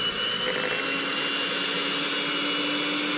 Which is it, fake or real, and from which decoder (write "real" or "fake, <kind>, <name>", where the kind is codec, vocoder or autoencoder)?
real